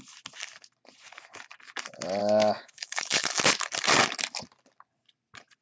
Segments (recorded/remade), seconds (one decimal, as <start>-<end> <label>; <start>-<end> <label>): 0.0-2.2 recorded; 2.2-3.4 remade; 3.4-5.6 recorded